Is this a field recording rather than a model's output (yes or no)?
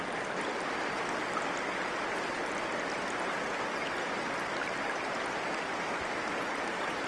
yes